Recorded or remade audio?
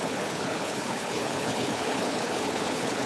remade